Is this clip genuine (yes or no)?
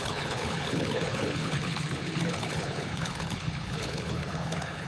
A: no